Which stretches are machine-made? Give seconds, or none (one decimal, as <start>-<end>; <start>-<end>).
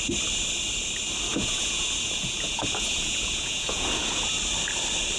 1.3-4.4